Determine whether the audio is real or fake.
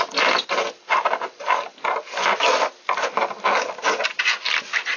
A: real